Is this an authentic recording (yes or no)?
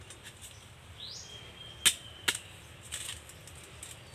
yes